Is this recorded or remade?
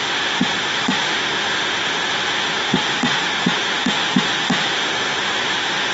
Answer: remade